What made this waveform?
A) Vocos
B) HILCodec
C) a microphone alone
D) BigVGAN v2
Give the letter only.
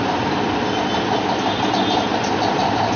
C